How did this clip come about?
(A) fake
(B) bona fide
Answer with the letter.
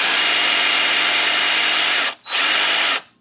B